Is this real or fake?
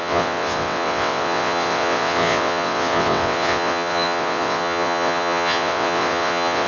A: fake